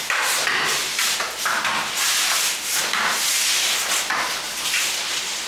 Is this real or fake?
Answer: real